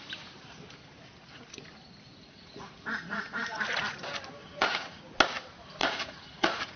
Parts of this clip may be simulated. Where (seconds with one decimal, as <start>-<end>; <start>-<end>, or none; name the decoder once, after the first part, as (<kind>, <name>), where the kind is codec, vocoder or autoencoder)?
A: 2.2-3.6 (vocoder, Vocos); 4.4-5.0; 5.8-6.8